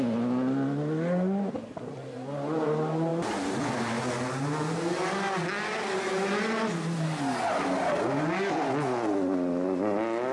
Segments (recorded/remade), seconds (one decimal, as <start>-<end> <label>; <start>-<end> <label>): 0.0-10.3 recorded